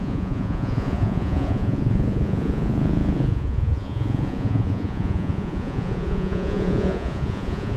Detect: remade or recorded remade